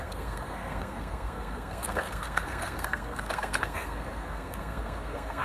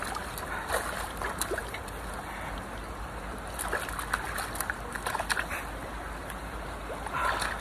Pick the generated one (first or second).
first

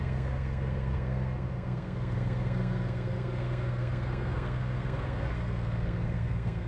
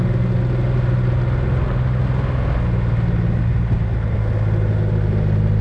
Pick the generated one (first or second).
first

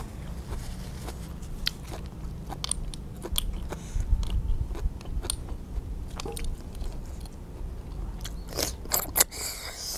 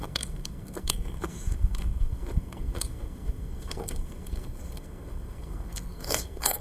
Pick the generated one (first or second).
second